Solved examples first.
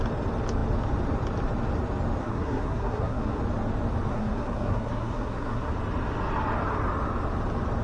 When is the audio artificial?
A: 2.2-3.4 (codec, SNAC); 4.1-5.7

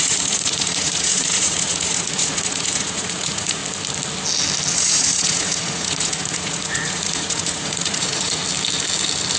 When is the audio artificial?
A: 0.0-3.6 (vocoder, Vocos); 4.7-8.4